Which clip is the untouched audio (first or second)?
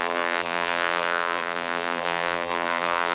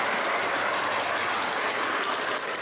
second